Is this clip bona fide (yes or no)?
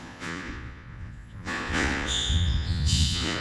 no